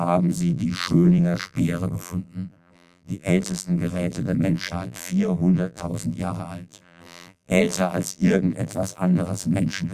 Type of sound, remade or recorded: remade